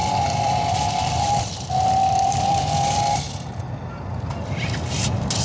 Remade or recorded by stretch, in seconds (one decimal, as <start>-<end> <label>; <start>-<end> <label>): 0.0-3.2 remade; 3.2-5.4 recorded